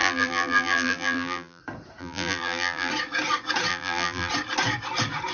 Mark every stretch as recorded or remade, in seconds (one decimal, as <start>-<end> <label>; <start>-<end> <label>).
0.0-1.6 remade; 1.6-2.0 recorded; 2.0-2.9 remade; 2.9-3.7 recorded; 3.7-4.3 remade; 4.3-5.3 recorded